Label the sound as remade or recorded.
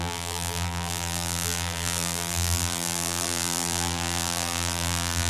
remade